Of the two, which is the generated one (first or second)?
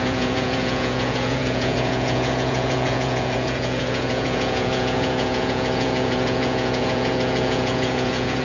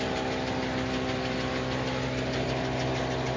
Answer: first